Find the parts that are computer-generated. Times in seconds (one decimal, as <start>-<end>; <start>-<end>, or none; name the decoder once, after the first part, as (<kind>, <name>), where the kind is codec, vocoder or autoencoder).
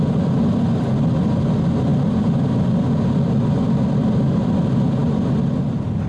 none